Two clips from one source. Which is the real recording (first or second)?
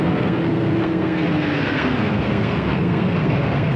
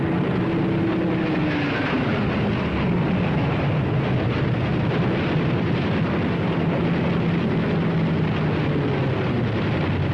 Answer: second